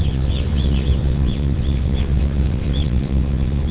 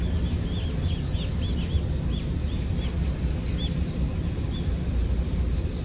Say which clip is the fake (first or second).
first